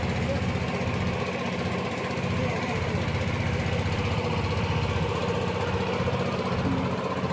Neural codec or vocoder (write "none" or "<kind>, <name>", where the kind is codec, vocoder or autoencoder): none